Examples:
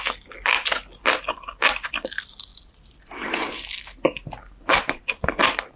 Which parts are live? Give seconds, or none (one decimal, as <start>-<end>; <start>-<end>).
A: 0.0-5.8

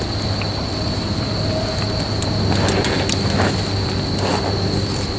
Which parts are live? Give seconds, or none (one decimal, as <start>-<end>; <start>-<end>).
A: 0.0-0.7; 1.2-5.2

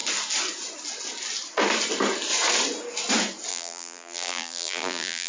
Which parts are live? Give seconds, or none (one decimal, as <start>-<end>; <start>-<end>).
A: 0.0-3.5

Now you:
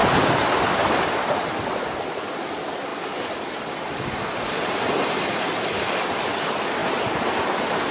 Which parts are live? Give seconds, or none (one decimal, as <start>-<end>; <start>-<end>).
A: 6.8-7.9

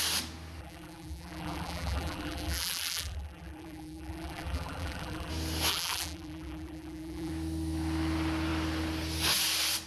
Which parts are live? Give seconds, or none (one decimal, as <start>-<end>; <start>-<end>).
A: 0.0-0.6; 5.3-5.7; 7.3-9.9

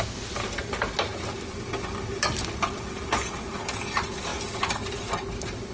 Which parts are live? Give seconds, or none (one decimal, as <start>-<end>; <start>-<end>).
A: 0.0-5.7

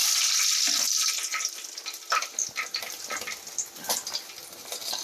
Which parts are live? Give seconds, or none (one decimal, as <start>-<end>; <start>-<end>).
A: 0.0-5.0

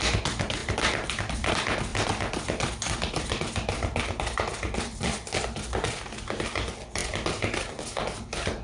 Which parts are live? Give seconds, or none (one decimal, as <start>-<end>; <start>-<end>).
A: 0.0-0.6; 1.5-1.9; 4.0-8.6